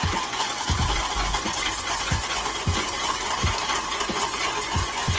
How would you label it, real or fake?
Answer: fake